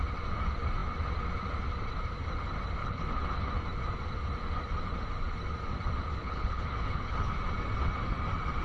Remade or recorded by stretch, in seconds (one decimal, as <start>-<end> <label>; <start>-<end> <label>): 0.0-2.8 recorded; 2.8-3.5 remade; 3.5-6.2 recorded; 6.2-7.4 remade; 7.4-8.6 recorded